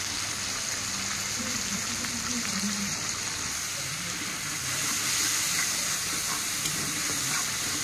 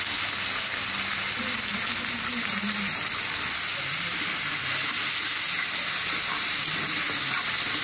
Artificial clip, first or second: first